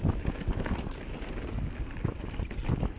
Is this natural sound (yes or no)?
yes